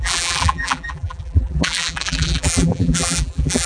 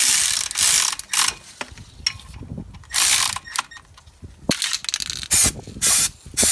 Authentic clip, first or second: second